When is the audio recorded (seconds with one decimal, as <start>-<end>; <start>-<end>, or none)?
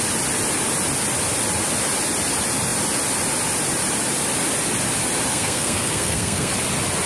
0.0-5.3; 6.5-7.1